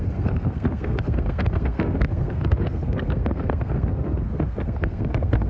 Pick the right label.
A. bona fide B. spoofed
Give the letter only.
B